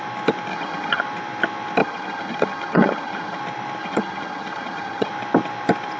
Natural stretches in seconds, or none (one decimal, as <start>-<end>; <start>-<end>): 0.0-0.5; 1.0-1.8; 3.4-3.8; 5.1-6.0